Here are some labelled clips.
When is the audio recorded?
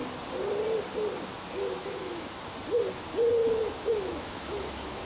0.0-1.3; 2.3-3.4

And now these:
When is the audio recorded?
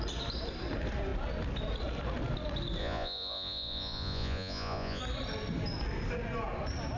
0.0-2.8; 5.0-7.0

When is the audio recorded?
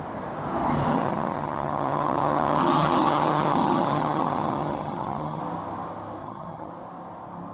0.0-0.9; 5.4-6.2; 6.7-7.5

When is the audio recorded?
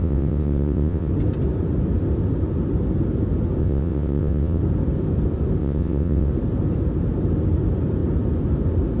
1.1-3.6; 4.6-5.6; 6.3-9.0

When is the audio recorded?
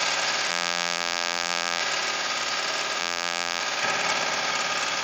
0.0-0.5; 1.8-3.0; 3.6-5.0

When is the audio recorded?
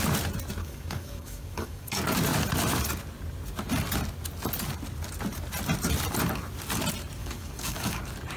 0.0-0.6; 1.9-7.2; 8.0-8.4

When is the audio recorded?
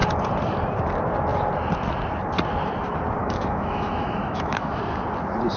0.0-3.2; 4.8-5.6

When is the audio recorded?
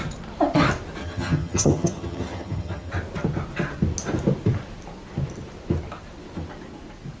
0.0-1.0; 2.9-7.2